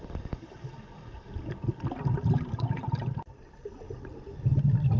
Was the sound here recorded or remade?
recorded